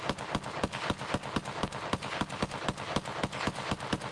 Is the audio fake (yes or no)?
no